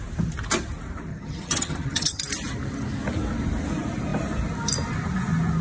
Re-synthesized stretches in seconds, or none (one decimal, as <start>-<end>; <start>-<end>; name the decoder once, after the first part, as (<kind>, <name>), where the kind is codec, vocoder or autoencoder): 1.1-2.2 (vocoder, HiFi-GAN)